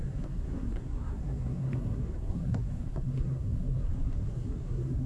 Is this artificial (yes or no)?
yes